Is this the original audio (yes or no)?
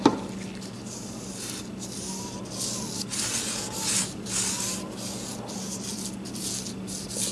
yes